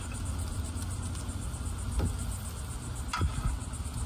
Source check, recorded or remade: recorded